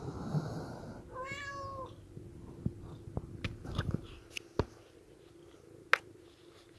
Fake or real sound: real